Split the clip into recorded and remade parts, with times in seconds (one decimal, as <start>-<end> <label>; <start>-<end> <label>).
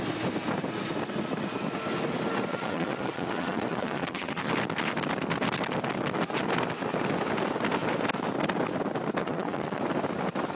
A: 0.0-2.5 recorded; 2.5-4.5 remade; 4.5-9.2 recorded; 9.2-9.8 remade; 9.8-10.6 recorded